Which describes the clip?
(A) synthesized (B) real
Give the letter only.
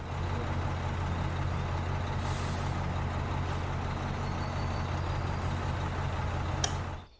B